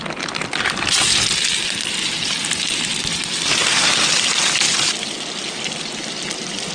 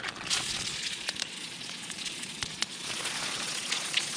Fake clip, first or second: second